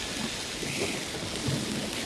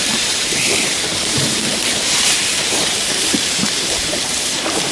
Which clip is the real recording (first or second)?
first